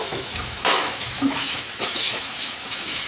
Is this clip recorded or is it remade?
remade